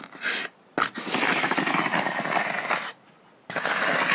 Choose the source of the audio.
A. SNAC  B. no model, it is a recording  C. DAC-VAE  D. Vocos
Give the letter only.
B